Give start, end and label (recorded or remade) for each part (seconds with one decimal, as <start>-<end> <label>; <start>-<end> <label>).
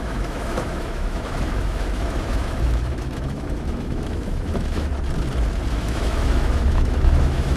0.0-4.9 remade; 4.9-5.7 recorded; 5.7-7.6 remade